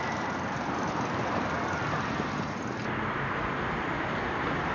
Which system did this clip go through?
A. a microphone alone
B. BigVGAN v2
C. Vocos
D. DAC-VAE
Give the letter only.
A